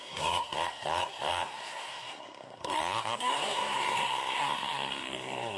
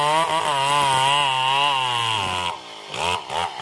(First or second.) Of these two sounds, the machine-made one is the first